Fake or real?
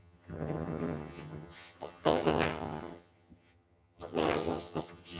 fake